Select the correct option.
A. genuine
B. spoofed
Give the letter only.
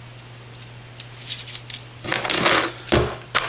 A